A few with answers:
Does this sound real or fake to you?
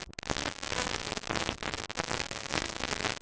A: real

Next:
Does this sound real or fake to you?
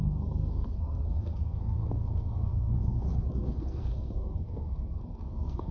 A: fake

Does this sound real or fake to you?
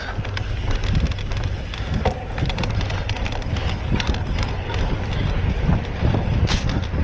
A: real